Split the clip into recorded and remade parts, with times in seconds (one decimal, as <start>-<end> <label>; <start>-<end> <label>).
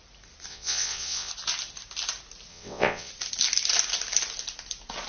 0.0-0.5 recorded; 0.5-1.3 remade; 1.3-2.5 recorded; 2.5-3.1 remade; 3.1-5.1 recorded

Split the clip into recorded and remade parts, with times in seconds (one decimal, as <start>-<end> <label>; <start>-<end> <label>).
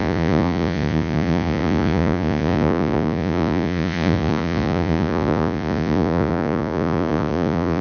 0.0-7.8 remade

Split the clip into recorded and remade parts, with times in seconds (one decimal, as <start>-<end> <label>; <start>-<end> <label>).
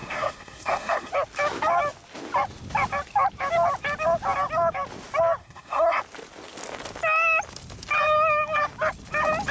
0.0-1.1 remade; 1.1-5.4 recorded; 5.4-6.0 remade; 6.0-9.5 recorded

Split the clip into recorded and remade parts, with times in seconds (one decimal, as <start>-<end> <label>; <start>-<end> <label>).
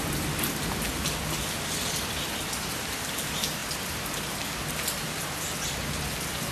0.0-6.5 recorded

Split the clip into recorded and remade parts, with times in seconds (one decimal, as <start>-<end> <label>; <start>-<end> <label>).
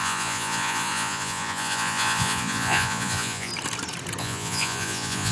0.0-3.5 remade; 3.5-4.2 recorded; 4.2-5.3 remade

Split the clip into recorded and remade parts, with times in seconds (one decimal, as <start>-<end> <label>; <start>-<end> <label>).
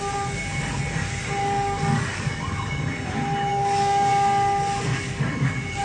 0.0-1.4 recorded; 1.4-2.8 remade; 2.8-3.5 recorded; 3.5-4.1 remade; 4.1-4.9 recorded; 4.9-5.8 remade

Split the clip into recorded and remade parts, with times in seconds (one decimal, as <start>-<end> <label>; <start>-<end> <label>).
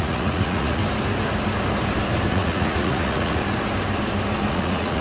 0.0-0.8 remade; 0.8-2.3 recorded; 2.3-3.4 remade; 3.4-4.5 recorded; 4.5-5.0 remade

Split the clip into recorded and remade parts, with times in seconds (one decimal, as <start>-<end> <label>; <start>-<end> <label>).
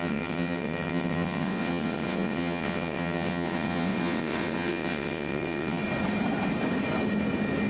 0.0-5.8 remade; 5.8-7.7 recorded